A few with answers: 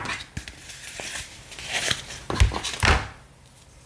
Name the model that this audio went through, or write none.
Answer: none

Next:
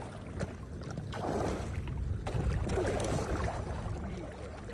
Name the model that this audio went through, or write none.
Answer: none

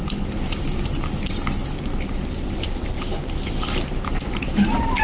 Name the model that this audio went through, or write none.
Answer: none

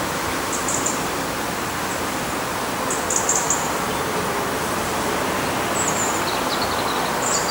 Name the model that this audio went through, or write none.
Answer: none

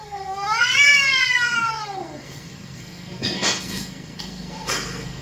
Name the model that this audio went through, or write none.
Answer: codec, SNAC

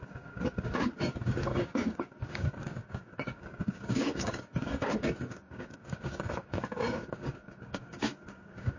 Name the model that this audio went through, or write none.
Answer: codec, DAC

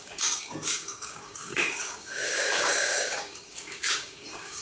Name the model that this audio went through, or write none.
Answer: codec, DAC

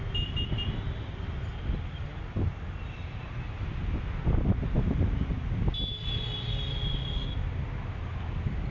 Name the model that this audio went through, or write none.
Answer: none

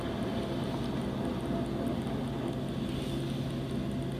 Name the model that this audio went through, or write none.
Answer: none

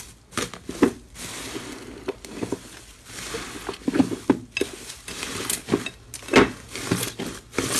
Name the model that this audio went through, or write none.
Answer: none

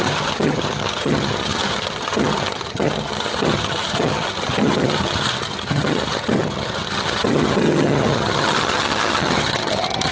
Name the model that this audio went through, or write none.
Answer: vocoder, HiFi-GAN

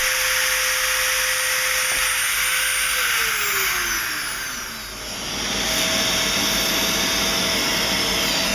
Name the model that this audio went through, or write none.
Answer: none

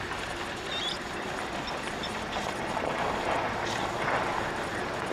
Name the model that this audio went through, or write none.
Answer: none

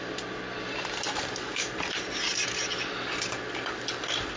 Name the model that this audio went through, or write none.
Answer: none